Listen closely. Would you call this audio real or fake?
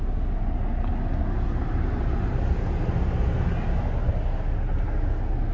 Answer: real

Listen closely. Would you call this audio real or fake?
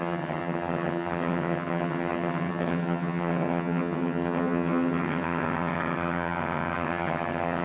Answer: fake